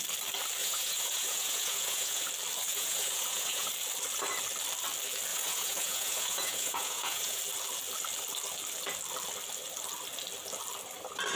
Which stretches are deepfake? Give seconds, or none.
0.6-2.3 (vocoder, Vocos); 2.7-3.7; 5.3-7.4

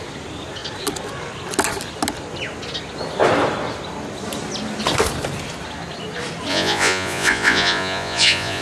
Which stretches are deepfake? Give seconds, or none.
6.5-8.6 (vocoder, Vocos)

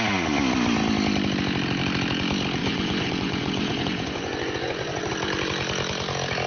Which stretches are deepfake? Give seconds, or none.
2.6-5.1 (vocoder, Vocos)

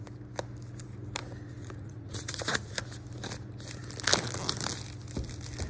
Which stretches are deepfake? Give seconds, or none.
1.6-2.7 (vocoder, Vocos)